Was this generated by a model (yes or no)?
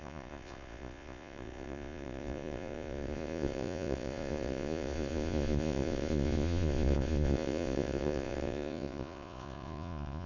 yes